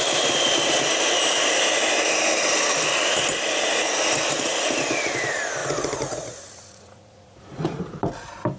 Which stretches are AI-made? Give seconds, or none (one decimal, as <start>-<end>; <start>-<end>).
5.6-7.8